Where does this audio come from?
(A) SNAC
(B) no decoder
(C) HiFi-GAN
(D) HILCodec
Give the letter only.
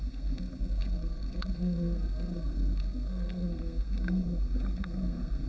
A